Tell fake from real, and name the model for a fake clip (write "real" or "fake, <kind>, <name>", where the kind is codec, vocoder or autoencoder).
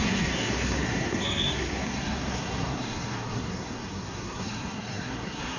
fake, codec, SNAC